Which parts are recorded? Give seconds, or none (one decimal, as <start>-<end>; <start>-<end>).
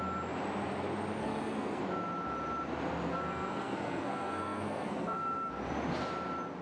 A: 0.0-1.2; 1.8-3.1; 5.5-6.6